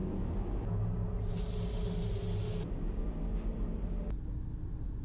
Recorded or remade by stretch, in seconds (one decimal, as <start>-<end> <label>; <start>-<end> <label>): 0.0-5.0 recorded